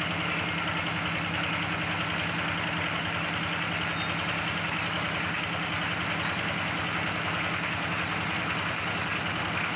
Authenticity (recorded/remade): recorded